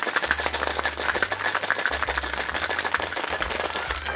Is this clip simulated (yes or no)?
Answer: no